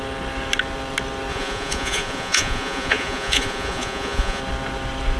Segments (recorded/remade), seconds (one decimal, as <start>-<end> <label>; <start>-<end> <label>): 0.0-1.3 recorded; 1.3-4.4 remade; 4.4-5.2 recorded